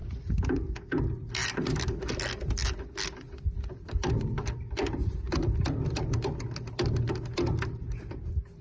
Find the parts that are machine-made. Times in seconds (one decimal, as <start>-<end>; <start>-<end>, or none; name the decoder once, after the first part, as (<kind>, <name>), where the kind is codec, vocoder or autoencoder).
none